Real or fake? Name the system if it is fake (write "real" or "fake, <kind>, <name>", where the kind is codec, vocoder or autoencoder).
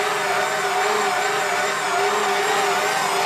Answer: real